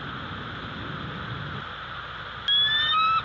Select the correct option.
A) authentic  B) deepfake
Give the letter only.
A